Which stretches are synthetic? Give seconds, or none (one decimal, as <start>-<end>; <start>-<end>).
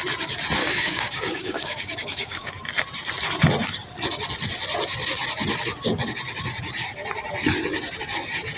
0.6-2.5